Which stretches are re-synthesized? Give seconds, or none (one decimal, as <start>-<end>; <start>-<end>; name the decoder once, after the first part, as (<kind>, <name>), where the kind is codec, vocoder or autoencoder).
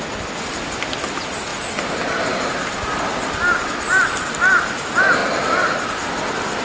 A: none